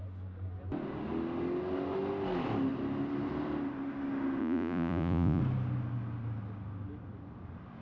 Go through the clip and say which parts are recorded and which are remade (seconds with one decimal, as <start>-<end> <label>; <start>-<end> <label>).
0.0-4.4 recorded; 4.4-5.4 remade; 5.4-7.8 recorded